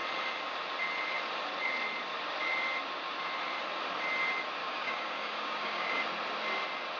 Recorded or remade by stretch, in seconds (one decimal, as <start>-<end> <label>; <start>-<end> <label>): 0.0-4.6 recorded; 4.6-6.0 remade; 6.0-7.0 recorded